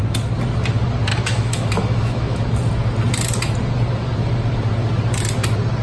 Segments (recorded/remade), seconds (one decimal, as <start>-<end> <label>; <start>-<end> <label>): 0.0-1.1 recorded; 1.1-2.4 remade; 2.4-5.8 recorded